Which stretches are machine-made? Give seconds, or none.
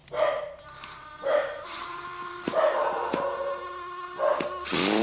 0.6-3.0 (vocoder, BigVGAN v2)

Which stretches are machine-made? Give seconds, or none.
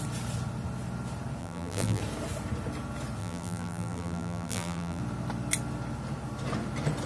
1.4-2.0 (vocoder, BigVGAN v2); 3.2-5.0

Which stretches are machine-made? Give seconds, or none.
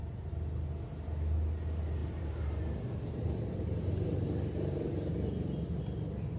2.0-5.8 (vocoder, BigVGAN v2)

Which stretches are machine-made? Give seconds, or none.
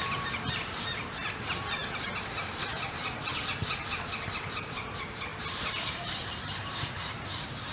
0.0-7.7 (vocoder, BigVGAN v2)